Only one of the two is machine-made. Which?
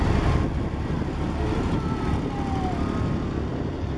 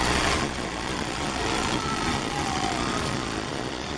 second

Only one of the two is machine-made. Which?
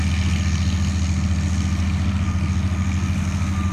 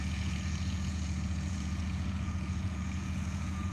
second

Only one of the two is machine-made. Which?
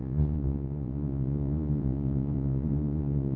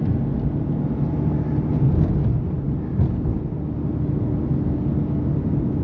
first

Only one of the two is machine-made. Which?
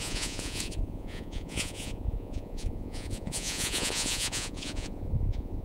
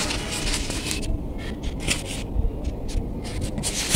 first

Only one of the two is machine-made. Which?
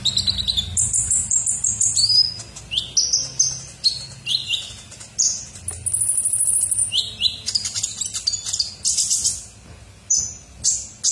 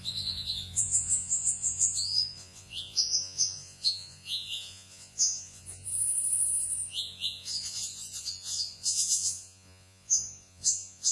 second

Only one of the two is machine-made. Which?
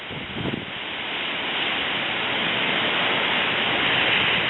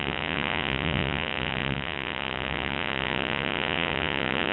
second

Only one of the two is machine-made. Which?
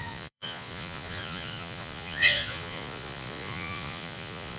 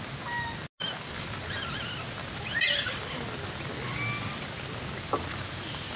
first